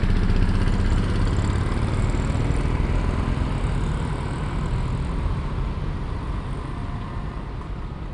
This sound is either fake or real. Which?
real